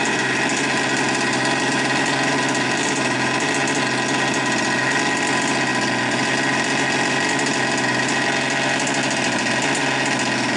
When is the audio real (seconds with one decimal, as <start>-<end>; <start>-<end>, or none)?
0.0-10.6